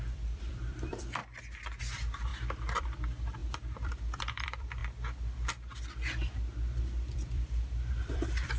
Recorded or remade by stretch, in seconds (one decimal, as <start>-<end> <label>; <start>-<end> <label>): 0.0-1.2 remade; 1.2-1.8 recorded; 1.8-2.3 remade; 2.3-2.8 recorded; 2.8-4.8 remade; 4.8-6.8 recorded; 6.8-8.6 remade